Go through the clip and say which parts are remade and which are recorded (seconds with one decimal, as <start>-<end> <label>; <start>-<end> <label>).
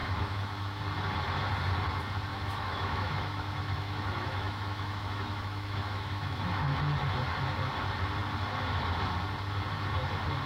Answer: 0.0-0.8 remade; 0.8-2.3 recorded; 2.3-6.8 remade; 6.8-10.5 recorded